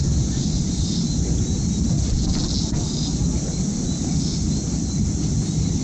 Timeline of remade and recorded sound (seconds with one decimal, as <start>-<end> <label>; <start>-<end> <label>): 0.0-5.8 recorded